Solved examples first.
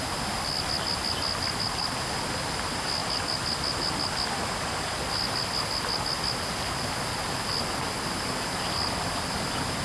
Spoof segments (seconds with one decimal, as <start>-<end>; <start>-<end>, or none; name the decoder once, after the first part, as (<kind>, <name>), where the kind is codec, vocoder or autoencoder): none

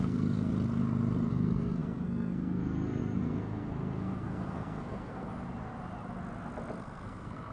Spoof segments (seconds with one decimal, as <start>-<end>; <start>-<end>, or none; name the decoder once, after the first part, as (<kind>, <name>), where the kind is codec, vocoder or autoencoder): 0.0-0.5 (codec, SNAC); 1.3-5.3; 6.8-7.5

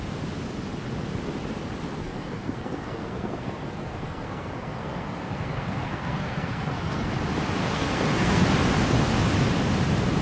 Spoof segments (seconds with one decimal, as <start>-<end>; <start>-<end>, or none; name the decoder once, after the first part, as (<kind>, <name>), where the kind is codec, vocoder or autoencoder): 2.0-7.1 (codec, SNAC); 7.6-8.4